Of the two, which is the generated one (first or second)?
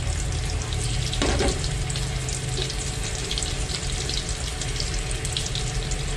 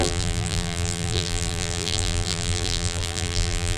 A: second